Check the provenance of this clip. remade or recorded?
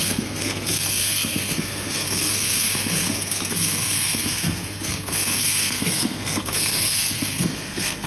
remade